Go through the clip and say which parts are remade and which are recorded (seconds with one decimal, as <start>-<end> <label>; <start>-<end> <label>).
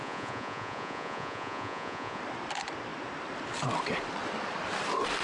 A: 0.0-2.2 remade; 2.2-5.2 recorded